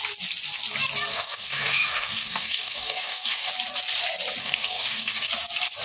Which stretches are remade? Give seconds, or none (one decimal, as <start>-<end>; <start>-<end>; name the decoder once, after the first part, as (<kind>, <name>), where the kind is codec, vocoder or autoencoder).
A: 1.1-3.5 (codec, DAC); 4.4-5.3